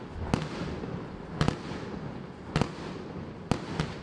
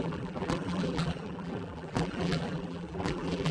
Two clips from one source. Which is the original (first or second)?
first